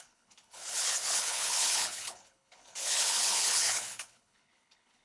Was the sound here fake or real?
fake